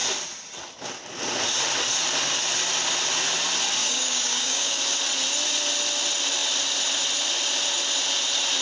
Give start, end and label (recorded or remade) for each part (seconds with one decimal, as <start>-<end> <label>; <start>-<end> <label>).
0.0-3.8 recorded; 3.8-4.8 remade; 4.8-8.6 recorded